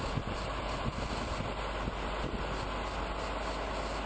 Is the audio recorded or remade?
recorded